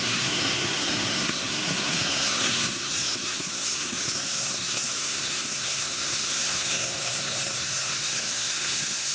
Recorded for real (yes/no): no